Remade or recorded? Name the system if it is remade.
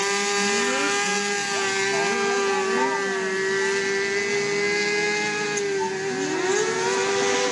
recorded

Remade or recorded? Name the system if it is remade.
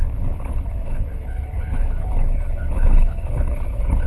remade, codec, HILCodec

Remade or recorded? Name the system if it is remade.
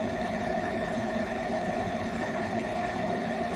remade, codec, HILCodec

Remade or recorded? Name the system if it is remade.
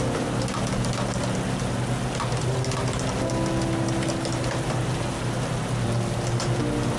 recorded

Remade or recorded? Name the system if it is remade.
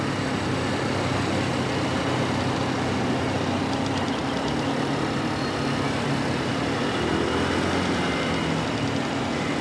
recorded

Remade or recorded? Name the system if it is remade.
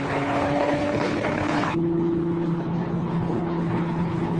remade, codec, HILCodec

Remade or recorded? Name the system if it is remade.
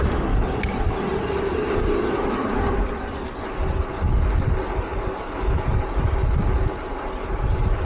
recorded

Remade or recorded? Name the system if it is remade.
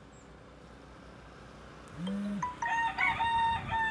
recorded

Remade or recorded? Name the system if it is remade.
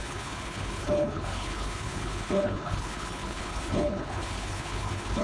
remade, codec, HILCodec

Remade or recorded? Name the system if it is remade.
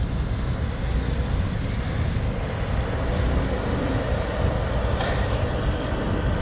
recorded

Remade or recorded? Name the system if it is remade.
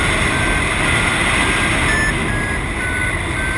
recorded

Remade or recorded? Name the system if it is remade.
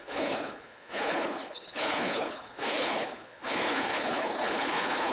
remade, codec, HILCodec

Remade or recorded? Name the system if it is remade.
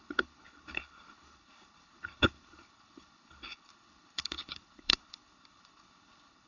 remade, codec, HILCodec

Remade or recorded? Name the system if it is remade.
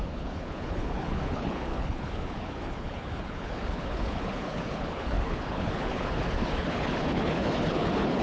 remade, codec, HILCodec